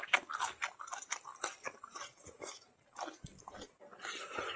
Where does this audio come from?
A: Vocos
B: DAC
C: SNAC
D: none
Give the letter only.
D